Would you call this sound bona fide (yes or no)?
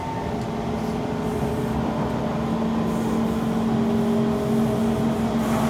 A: yes